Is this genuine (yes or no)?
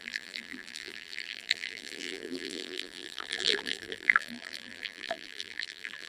no